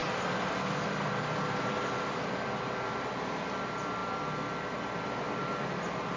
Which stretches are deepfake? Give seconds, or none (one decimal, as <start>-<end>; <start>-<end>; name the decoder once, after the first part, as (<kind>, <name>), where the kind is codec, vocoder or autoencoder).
none